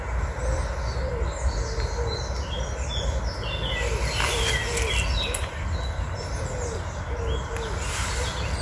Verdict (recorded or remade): recorded